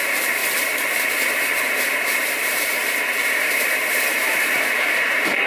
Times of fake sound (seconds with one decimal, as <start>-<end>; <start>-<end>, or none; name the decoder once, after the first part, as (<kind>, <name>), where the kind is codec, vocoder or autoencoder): 0.0-0.4 (vocoder, BigVGAN v2); 1.6-2.8; 3.3-5.5

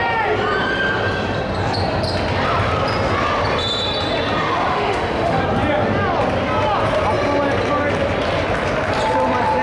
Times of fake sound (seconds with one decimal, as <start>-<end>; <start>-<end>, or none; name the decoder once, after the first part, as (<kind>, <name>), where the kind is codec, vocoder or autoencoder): 4.7-5.4 (autoencoder, DAC-VAE)

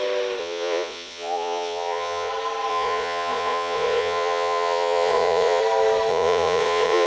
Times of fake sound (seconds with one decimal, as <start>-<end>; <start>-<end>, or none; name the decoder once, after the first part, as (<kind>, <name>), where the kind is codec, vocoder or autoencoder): 0.4-2.3 (vocoder, Vocos); 2.7-5.6; 6.1-7.1

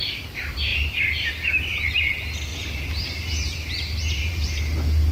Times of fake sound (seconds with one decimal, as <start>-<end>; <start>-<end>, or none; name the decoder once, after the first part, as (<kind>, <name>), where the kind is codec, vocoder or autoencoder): 2.5-4.6 (vocoder, BigVGAN v2)

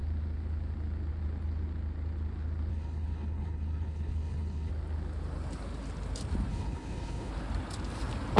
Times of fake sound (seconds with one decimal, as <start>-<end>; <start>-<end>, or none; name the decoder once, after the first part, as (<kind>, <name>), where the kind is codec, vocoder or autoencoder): 2.7-4.7 (codec, HILCodec); 6.5-7.3

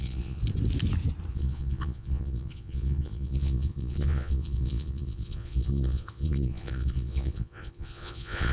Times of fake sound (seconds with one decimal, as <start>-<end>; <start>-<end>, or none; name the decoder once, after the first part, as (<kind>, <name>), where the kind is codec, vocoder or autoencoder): 0.0-0.4 (vocoder, Vocos); 1.3-8.5